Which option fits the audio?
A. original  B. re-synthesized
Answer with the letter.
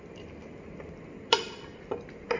A